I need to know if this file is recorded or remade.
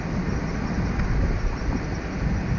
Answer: recorded